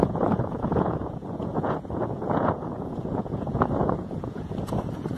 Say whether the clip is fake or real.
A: fake